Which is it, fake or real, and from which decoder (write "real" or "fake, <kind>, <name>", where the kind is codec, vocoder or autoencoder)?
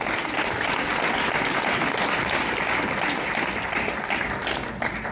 real